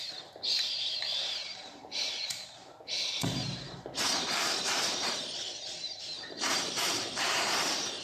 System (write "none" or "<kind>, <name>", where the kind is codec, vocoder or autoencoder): vocoder, BigVGAN v2